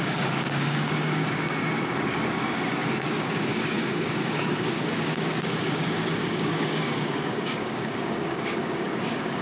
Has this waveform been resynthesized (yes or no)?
yes